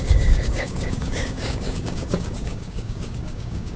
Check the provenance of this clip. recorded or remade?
remade